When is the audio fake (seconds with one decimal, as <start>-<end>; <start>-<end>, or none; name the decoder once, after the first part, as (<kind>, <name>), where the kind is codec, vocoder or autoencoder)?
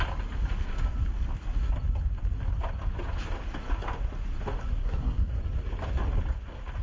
4.8-5.4 (codec, SNAC)